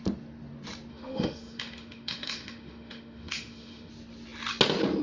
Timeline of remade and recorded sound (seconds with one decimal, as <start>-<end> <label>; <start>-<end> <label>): 0.0-0.9 recorded; 0.9-3.9 remade; 3.9-5.0 recorded